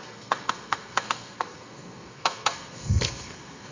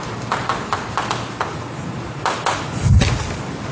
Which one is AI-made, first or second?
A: first